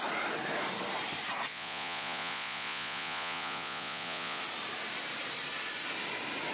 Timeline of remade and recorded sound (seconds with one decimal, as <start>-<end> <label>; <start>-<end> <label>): 0.0-1.5 recorded; 1.5-4.4 remade; 4.4-6.5 recorded